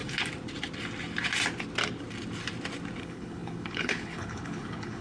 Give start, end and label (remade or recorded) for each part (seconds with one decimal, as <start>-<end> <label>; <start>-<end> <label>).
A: 0.0-3.0 recorded; 3.0-5.0 remade